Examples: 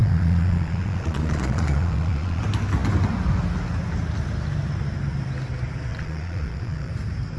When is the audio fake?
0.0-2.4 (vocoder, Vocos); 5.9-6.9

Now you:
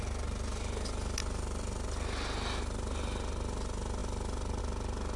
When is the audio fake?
none

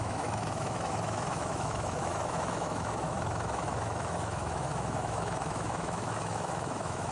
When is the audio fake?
0.0-7.1 (autoencoder, DAC-VAE)

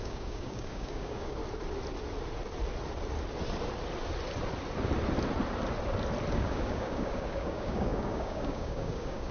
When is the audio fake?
0.0-1.4 (codec, DAC); 6.3-9.3